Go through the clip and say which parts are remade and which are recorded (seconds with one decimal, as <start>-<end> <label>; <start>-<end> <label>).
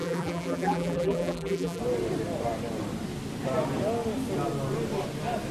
0.0-1.8 remade; 1.8-5.5 recorded